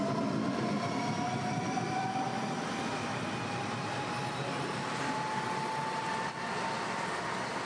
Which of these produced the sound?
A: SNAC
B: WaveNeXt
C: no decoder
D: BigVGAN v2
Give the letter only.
C